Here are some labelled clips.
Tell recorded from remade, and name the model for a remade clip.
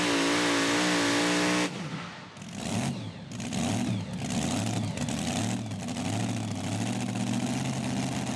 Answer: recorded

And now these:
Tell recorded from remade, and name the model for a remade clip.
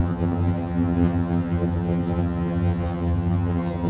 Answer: remade, vocoder, HiFi-GAN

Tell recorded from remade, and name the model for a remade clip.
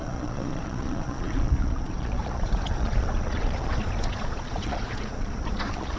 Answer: remade, vocoder, Vocos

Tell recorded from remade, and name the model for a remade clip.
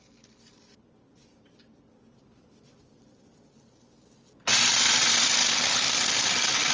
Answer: recorded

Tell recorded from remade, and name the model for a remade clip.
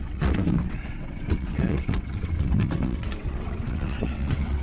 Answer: remade, vocoder, WaveNeXt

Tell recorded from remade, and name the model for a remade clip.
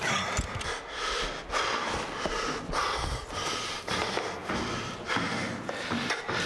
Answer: recorded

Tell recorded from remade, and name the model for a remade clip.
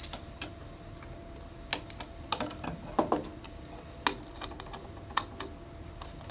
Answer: recorded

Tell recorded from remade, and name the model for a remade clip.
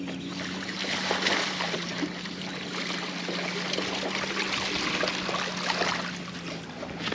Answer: recorded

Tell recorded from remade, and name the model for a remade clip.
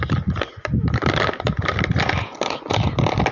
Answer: recorded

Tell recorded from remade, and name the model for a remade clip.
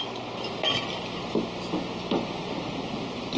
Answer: recorded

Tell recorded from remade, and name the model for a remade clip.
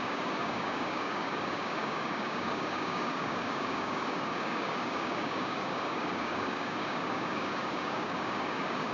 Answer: remade, codec, DAC